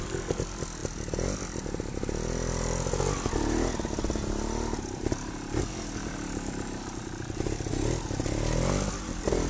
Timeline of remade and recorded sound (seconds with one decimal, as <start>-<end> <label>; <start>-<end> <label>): 0.0-9.5 recorded